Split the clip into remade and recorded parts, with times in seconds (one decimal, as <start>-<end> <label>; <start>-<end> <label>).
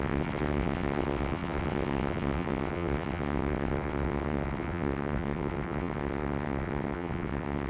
0.0-7.7 remade